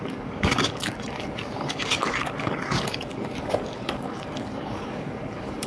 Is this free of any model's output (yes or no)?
no